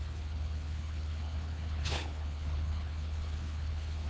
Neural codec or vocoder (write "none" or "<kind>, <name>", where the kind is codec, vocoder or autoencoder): codec, HILCodec